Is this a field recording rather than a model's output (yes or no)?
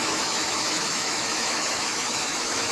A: no